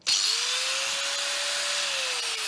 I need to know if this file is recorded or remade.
recorded